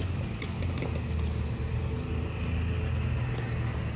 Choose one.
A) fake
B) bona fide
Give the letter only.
B